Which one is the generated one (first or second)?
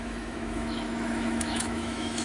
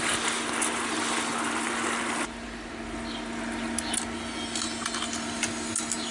first